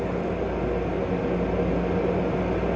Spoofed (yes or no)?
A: no